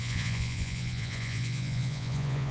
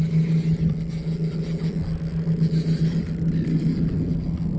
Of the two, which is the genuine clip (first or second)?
second